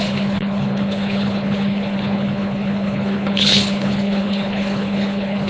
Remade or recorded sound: remade